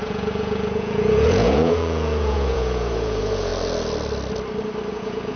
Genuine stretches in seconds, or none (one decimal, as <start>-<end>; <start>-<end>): 3.5-4.9